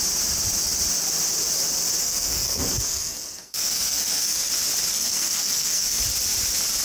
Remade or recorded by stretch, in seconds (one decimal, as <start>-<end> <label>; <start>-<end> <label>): 0.0-2.0 recorded; 2.0-4.5 remade; 4.5-4.9 recorded; 4.9-6.0 remade; 6.0-6.8 recorded